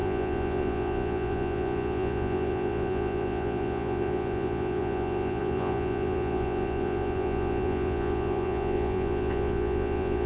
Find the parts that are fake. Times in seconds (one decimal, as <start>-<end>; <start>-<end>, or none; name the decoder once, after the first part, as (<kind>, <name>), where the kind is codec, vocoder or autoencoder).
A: 0.0-10.3 (vocoder, Vocos)